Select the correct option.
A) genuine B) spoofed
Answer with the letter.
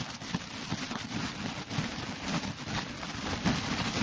A